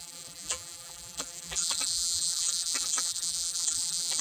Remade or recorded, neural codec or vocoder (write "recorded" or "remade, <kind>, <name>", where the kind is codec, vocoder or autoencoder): remade, vocoder, BigVGAN v2